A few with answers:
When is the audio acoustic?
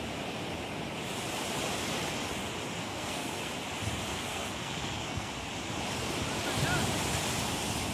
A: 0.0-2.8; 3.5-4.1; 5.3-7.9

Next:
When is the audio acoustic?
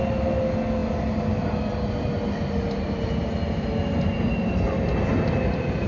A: 0.0-5.9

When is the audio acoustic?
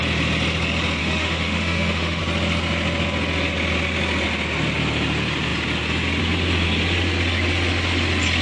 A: 0.0-1.0; 2.2-8.4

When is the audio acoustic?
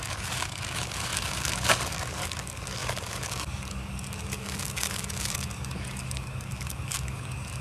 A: none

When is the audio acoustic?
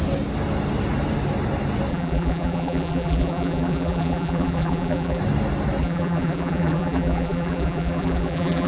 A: 0.0-1.9; 5.2-5.8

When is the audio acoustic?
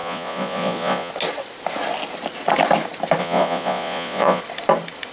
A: 1.1-3.2; 4.4-5.1